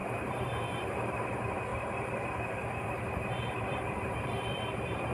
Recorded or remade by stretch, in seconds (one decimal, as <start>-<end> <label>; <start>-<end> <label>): 0.0-1.2 remade; 1.2-1.7 recorded; 1.7-5.1 remade